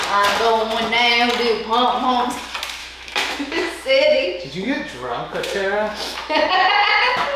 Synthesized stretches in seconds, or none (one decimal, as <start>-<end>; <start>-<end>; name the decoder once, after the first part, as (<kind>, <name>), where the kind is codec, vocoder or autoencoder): 2.8-6.7 (autoencoder, DAC-VAE)

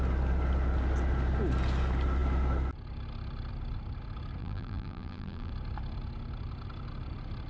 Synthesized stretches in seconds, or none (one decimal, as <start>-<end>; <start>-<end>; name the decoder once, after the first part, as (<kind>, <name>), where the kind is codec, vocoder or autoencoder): 4.4-5.5 (vocoder, BigVGAN v2)

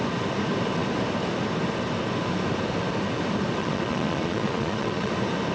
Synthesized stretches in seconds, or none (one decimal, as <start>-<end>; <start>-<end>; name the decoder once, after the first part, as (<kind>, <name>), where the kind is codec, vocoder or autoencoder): 3.6-5.1 (vocoder, Vocos)

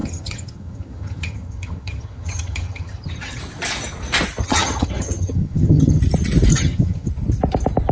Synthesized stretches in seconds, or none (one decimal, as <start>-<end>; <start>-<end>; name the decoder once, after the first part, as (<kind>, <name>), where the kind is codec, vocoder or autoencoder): 0.0-3.4 (vocoder, HiFi-GAN); 4.4-6.0; 6.5-7.1

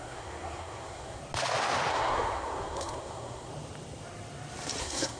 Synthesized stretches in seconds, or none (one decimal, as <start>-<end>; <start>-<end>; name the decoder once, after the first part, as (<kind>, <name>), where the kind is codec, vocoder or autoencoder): 0.0-1.2 (codec, SNAC); 1.9-3.5; 4.8-5.2

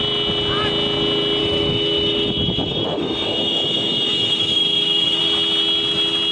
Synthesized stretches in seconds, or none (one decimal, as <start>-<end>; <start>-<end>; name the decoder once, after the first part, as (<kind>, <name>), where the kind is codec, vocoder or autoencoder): 1.4-5.2 (autoencoder, DAC-VAE)